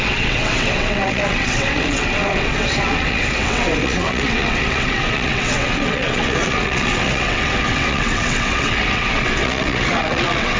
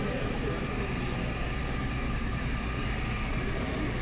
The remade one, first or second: first